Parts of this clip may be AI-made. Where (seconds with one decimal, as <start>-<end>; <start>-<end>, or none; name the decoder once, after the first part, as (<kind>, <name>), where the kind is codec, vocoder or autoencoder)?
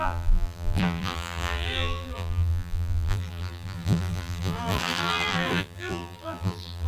0.0-6.9 (vocoder, BigVGAN v2)